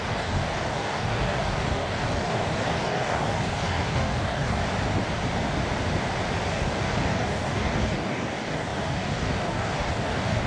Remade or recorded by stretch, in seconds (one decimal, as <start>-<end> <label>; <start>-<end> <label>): 0.0-4.6 remade; 4.6-6.5 recorded; 6.5-10.5 remade